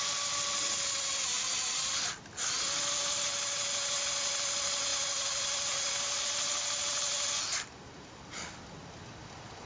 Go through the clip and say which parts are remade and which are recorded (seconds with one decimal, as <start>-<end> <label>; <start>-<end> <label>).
0.0-9.7 recorded

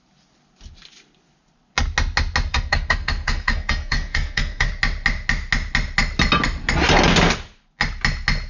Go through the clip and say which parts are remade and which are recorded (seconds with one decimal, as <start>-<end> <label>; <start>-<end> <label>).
0.0-2.5 recorded; 2.5-4.7 remade; 4.7-8.5 recorded